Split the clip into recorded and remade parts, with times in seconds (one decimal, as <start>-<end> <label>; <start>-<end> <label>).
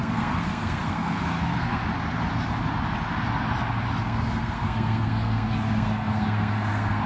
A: 0.0-1.8 remade; 1.8-4.0 recorded; 4.0-7.1 remade